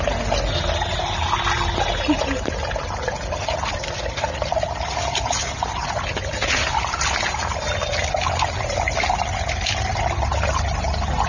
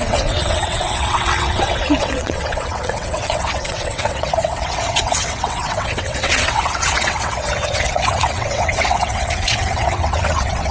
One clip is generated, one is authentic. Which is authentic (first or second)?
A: first